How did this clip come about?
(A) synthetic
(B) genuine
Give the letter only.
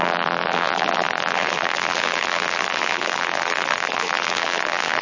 A